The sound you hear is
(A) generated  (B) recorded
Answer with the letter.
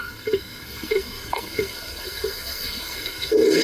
A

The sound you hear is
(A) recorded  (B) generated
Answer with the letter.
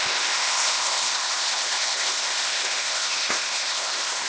B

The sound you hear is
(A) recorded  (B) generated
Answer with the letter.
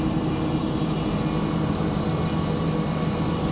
A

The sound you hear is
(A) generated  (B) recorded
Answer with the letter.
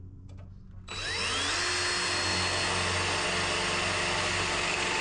B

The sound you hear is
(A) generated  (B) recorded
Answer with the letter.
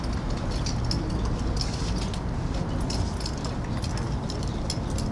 B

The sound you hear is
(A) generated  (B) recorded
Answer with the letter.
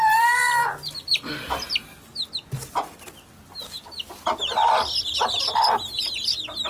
B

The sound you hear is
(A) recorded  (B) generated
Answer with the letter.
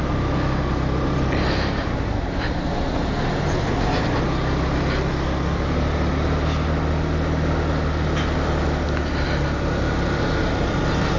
A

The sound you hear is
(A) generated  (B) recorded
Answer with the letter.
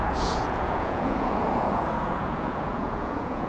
A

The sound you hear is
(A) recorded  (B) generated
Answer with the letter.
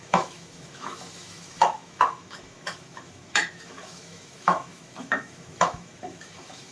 B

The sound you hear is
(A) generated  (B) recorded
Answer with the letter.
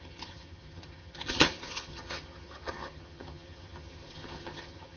A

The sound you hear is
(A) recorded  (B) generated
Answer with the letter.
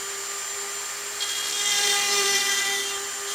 B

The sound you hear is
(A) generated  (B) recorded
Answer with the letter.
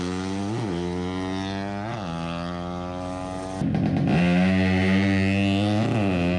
B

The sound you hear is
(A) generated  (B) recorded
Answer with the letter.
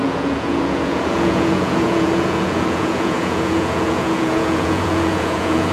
A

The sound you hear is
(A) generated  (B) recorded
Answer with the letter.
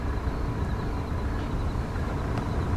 B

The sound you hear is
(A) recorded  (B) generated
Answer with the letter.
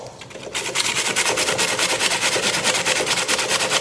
A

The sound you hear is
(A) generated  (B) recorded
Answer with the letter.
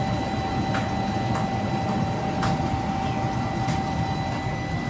B